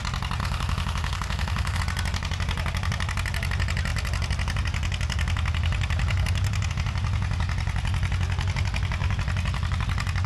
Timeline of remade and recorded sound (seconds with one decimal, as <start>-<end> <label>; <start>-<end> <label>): 0.0-0.4 recorded; 0.4-1.8 remade; 1.8-10.3 recorded

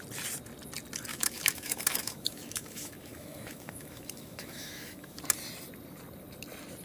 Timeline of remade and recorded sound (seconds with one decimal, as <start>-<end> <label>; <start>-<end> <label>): 0.0-1.1 recorded; 1.1-5.2 remade; 5.2-6.8 recorded